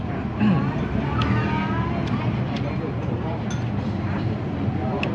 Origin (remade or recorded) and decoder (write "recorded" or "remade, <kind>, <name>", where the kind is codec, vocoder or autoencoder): recorded